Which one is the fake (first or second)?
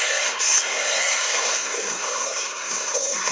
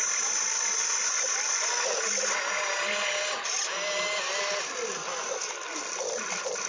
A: first